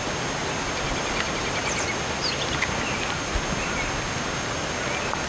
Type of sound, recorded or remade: recorded